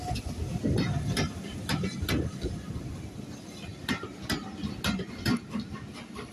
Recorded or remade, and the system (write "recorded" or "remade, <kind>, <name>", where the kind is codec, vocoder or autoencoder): recorded